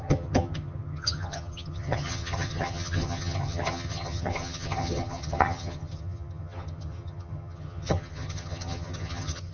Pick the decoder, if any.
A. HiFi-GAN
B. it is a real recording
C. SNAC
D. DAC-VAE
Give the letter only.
A